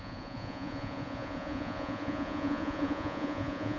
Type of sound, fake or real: fake